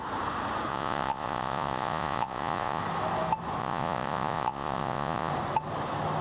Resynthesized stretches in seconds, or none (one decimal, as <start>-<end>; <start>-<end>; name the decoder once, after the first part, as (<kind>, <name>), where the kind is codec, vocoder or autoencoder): 0.7-2.8 (vocoder, Vocos); 3.6-5.3